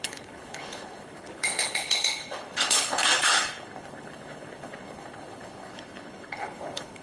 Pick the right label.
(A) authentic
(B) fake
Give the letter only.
B